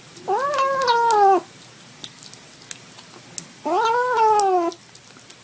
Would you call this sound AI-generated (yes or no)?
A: no